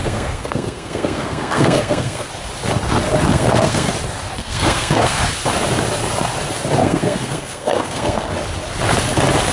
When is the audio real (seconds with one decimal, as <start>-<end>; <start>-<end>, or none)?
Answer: 2.3-3.3; 3.9-4.4; 5.2-6.8; 8.3-9.5